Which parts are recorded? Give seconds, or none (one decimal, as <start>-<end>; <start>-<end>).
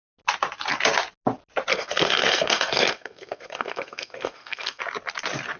0.0-1.7; 4.8-5.6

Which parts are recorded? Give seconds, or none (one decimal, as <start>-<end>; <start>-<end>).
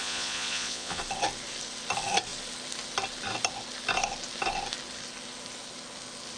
1.0-6.4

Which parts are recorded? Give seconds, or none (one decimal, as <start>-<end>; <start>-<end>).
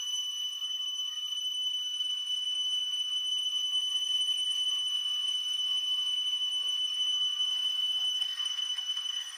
none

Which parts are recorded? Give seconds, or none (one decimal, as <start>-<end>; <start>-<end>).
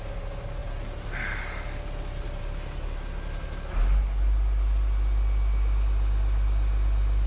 0.0-7.3